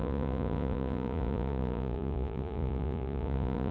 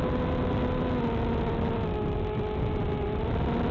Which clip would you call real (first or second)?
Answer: second